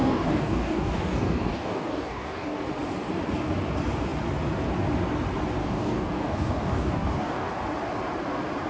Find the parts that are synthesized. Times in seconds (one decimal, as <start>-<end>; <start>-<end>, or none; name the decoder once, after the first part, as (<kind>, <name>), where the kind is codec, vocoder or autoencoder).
0.0-2.6 (codec, DAC); 5.6-7.5